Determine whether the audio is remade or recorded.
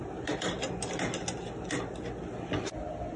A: recorded